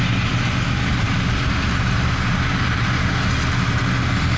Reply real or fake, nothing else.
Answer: real